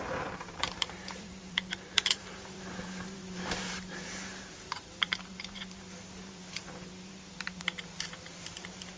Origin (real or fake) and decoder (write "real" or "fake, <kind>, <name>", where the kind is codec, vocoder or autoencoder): fake, vocoder, BigVGAN v2